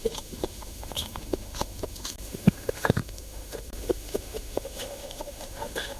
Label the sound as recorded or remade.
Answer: remade